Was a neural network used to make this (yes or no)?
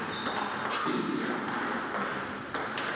no